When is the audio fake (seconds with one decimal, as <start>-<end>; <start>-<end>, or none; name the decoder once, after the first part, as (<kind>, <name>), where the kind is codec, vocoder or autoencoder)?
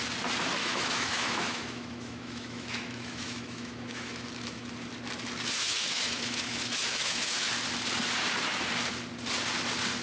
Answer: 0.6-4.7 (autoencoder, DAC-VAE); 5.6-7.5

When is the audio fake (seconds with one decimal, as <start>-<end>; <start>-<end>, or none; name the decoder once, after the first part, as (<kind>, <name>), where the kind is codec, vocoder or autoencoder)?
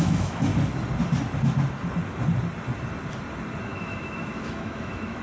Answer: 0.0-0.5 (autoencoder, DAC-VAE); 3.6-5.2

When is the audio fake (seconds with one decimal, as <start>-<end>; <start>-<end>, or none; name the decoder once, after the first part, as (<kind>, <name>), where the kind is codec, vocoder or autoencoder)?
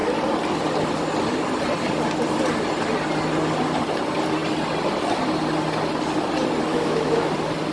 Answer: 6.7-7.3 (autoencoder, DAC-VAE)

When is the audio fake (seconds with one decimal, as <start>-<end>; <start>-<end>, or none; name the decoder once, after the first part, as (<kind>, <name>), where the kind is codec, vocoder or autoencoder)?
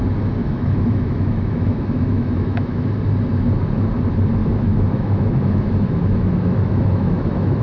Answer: 0.4-2.9 (autoencoder, DAC-VAE); 4.4-7.6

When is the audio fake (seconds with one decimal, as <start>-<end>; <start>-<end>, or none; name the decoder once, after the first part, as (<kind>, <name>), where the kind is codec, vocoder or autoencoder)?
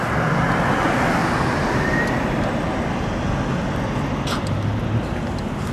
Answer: none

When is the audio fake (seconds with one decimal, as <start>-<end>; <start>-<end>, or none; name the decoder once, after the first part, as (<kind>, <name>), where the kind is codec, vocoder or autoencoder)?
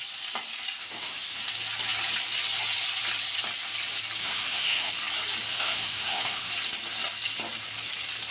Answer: 0.8-1.4 (autoencoder, DAC-VAE); 4.2-4.9; 5.5-6.5